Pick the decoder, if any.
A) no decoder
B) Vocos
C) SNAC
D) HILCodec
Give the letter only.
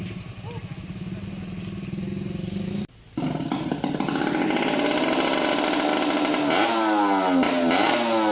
A